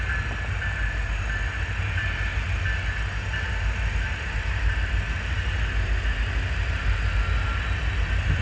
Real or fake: real